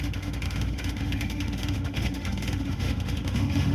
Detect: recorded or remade remade